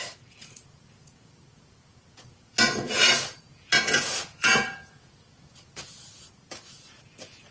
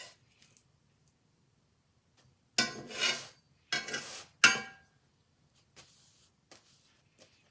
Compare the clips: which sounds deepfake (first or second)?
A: first